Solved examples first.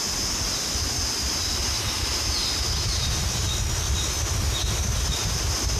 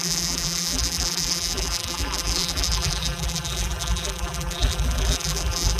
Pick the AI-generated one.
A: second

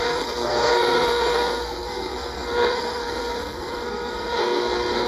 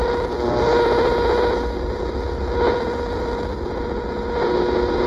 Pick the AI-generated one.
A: first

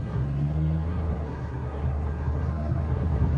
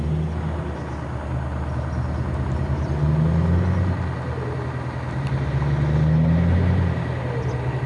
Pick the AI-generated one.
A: first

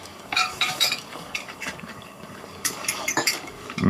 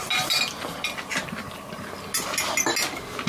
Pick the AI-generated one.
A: first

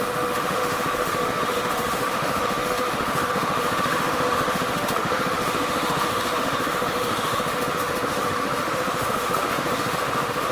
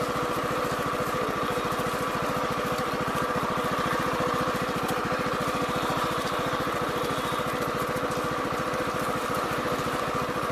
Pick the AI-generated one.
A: first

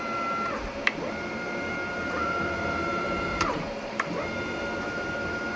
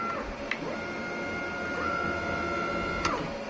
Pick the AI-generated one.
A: first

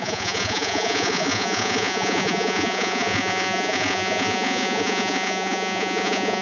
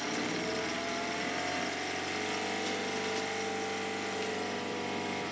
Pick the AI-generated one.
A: first